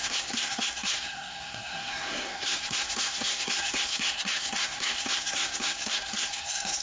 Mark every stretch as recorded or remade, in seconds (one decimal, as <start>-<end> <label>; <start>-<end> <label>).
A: 0.0-6.8 remade